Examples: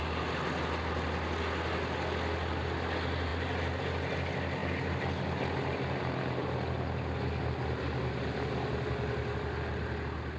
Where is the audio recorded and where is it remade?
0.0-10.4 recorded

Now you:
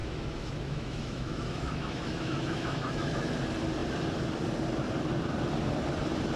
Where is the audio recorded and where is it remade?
0.0-3.3 remade; 3.3-6.4 recorded